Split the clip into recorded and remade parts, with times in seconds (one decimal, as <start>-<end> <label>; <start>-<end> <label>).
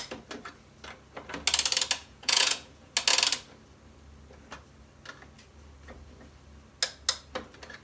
0.0-2.0 recorded; 2.0-2.9 remade; 2.9-7.8 recorded